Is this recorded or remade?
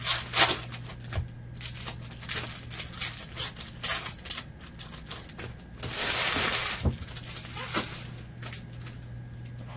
recorded